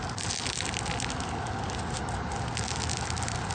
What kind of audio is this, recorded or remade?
recorded